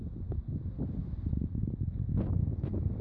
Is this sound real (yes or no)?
yes